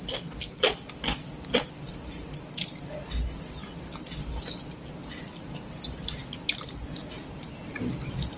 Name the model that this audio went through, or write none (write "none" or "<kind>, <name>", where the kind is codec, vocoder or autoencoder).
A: none